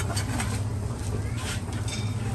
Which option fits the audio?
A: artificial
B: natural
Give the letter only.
B